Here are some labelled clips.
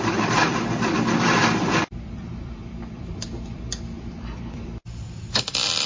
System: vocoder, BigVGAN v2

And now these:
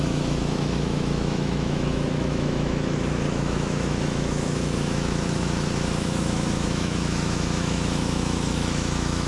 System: autoencoder, DAC-VAE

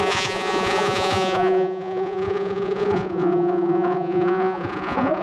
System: vocoder, Vocos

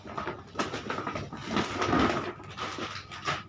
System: none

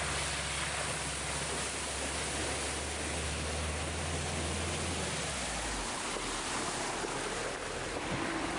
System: none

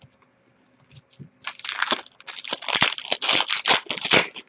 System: none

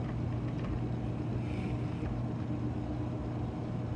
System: none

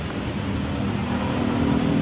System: none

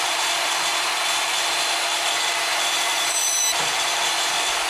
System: vocoder, BigVGAN v2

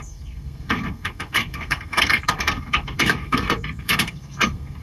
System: codec, SNAC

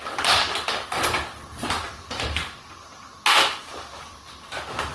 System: none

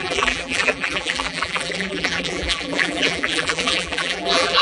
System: vocoder, BigVGAN v2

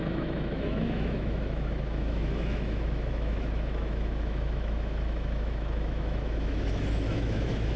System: autoencoder, DAC-VAE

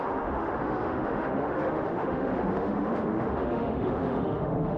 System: autoencoder, DAC-VAE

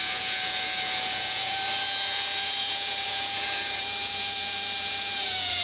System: vocoder, Vocos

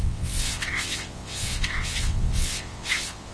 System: vocoder, WaveNeXt